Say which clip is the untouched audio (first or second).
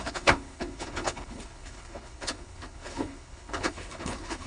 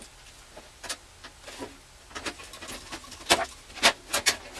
second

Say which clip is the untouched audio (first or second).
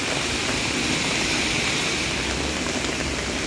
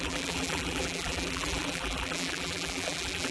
first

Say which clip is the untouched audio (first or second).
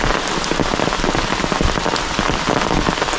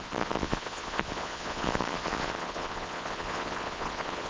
first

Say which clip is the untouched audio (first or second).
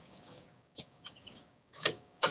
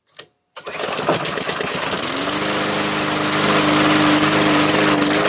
second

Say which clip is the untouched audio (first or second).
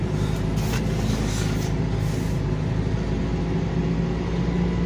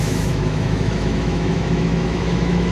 first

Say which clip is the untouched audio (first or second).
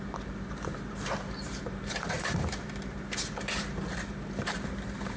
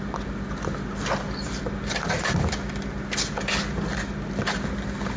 second